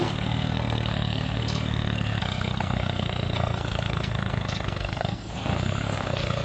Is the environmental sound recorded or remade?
remade